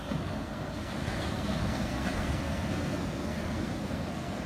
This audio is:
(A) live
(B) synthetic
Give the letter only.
B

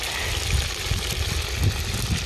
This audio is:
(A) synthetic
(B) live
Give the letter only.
B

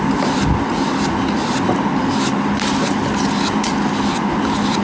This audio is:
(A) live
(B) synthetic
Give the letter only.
A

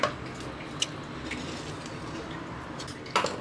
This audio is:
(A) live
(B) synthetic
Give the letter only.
A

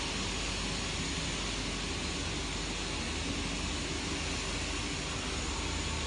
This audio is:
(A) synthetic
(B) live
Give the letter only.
B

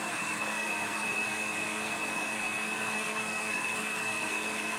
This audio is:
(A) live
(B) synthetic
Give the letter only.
B